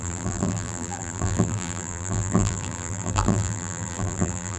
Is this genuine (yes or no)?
no